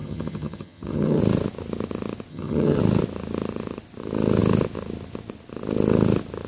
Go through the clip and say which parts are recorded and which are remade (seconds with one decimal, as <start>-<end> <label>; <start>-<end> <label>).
0.0-1.2 remade; 1.2-2.3 recorded; 2.3-2.8 remade; 2.8-6.5 recorded